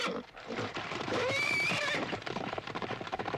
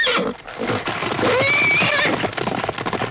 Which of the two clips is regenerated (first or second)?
first